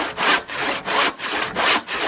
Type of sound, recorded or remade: recorded